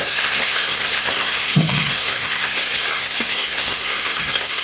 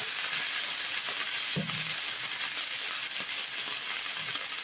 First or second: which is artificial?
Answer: first